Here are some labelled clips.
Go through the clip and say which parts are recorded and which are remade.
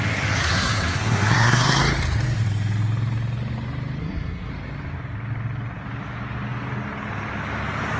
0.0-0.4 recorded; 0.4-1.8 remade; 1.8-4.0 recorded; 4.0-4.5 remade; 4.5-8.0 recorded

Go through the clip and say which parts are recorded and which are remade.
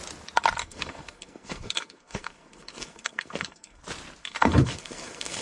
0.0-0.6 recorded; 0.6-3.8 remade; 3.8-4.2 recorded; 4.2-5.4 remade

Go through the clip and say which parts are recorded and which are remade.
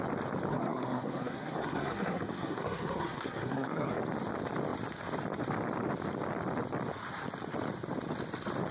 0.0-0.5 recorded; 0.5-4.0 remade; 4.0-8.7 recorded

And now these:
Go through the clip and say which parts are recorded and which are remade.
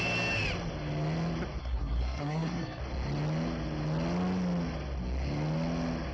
0.0-1.6 recorded; 1.6-2.8 remade; 2.8-6.1 recorded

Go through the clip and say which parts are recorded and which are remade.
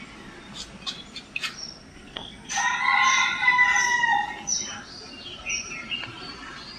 0.0-1.9 recorded; 1.9-2.5 remade; 2.5-6.8 recorded